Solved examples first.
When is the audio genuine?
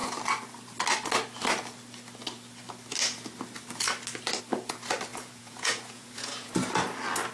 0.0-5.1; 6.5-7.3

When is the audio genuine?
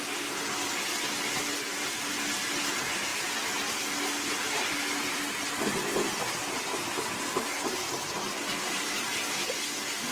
0.0-10.1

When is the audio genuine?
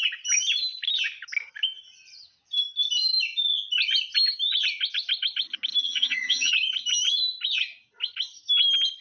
0.0-5.8; 6.5-9.0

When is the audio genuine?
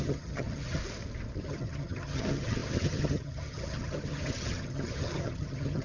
0.8-1.4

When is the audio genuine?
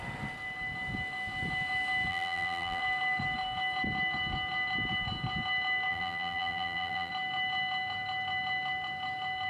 0.0-2.1; 2.8-5.9; 7.1-9.5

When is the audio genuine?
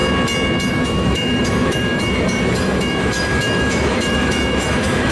0.0-0.7